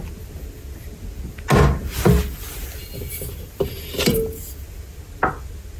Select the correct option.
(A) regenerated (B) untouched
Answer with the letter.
B